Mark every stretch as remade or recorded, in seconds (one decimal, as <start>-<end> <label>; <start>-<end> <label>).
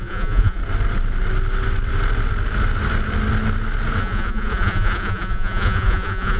0.0-0.6 remade; 0.6-4.0 recorded; 4.0-6.4 remade